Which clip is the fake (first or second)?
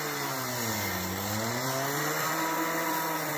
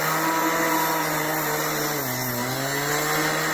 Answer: first